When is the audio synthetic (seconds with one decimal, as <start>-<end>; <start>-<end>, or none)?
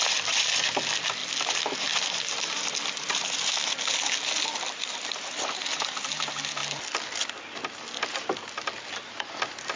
none